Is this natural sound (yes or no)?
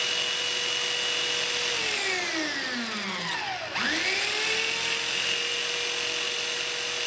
yes